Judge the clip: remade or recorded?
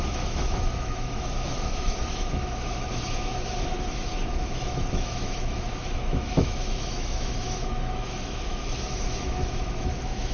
remade